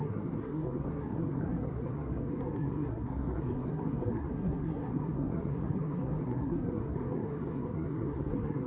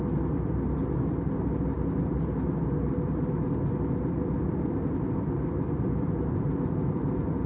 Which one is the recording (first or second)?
second